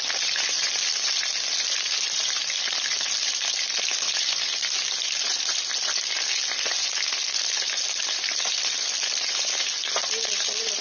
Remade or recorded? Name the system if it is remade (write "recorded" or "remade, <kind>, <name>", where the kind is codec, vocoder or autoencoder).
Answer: recorded